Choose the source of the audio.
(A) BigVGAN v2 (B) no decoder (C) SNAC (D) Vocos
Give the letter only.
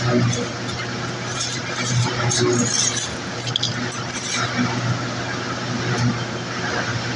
B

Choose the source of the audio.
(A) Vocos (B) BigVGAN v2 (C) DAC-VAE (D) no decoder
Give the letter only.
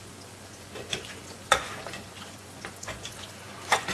A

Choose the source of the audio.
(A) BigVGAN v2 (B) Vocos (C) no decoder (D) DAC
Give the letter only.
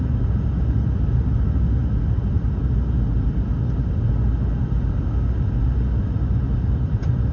C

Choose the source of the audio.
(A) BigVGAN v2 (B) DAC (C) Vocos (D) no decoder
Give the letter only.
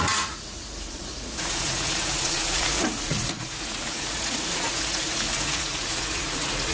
C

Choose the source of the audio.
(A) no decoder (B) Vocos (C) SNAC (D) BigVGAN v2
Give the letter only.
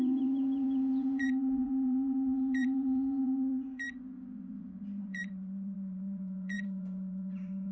B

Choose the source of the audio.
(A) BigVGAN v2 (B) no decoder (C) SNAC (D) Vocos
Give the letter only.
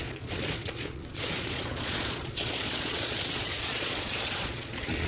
D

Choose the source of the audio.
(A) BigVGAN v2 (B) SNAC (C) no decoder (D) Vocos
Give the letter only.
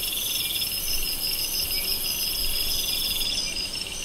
C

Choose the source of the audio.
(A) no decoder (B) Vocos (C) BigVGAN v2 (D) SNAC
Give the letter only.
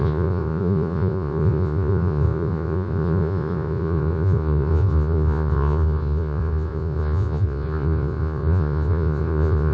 B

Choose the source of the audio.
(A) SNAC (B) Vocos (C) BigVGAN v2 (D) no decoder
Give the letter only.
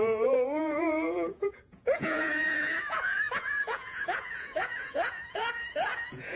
B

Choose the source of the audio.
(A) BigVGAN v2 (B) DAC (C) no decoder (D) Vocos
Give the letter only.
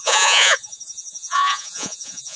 D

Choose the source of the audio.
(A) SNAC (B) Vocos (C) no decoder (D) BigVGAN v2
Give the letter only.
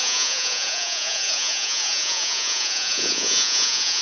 B